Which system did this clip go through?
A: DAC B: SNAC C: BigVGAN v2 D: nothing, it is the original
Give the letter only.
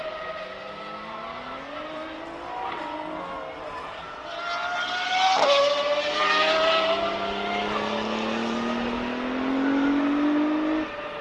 D